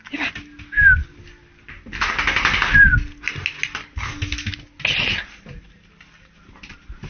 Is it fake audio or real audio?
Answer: real